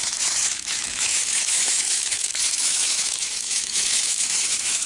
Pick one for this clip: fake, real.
fake